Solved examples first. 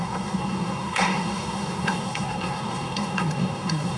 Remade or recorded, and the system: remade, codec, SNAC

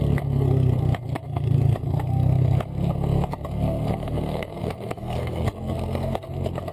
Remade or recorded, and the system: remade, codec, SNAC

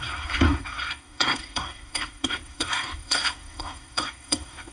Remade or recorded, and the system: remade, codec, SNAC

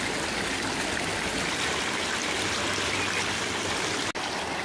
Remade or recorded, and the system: recorded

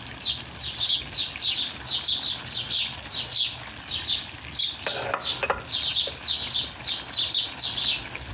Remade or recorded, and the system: recorded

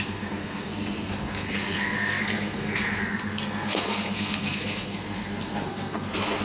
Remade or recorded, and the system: remade, codec, SNAC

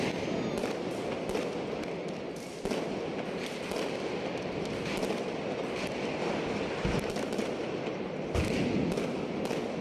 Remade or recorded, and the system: recorded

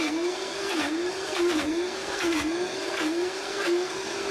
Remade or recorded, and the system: remade, codec, SNAC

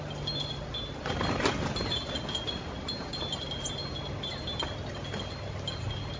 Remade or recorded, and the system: recorded